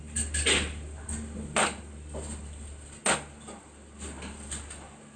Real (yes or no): yes